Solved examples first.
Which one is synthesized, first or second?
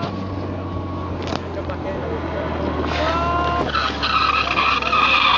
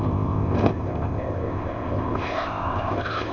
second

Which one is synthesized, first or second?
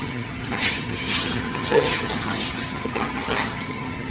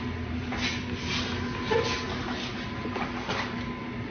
first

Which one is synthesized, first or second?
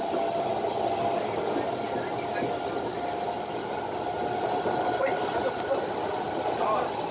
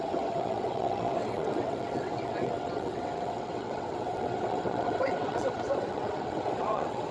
second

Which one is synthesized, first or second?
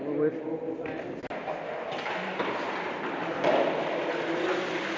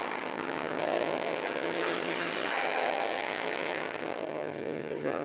second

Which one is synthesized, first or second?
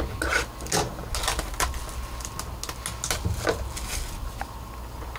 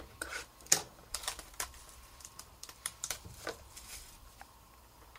second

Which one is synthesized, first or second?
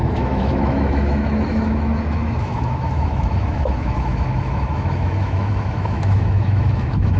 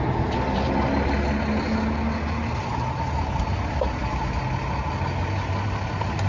first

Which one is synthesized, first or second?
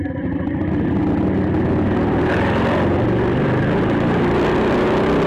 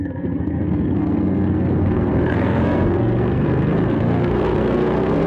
second